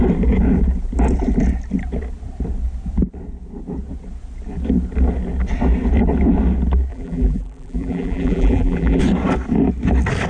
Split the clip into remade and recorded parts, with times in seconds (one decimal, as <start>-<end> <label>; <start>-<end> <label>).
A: 0.0-6.9 recorded; 6.9-9.0 remade; 9.0-10.3 recorded